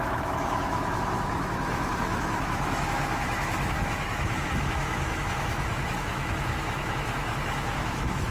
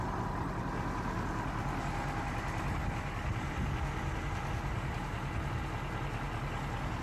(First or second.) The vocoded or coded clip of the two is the first